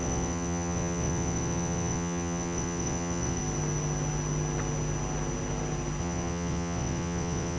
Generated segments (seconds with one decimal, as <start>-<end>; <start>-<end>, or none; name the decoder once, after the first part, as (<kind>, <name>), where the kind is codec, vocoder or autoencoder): 0.0-3.4 (vocoder, WaveNeXt); 6.0-7.6